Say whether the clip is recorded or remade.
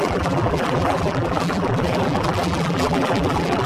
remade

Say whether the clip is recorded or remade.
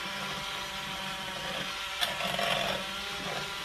recorded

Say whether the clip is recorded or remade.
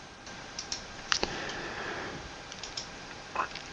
remade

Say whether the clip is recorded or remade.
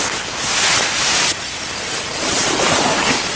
recorded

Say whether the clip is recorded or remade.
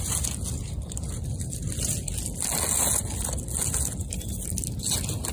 recorded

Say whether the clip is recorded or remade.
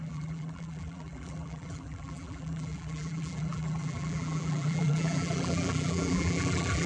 remade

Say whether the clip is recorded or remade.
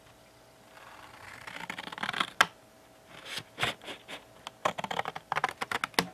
recorded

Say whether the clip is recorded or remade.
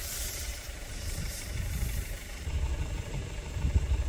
remade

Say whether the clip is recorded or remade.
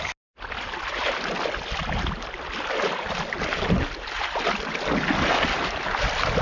recorded